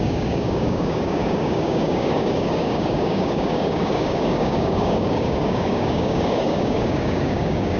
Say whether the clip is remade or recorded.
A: remade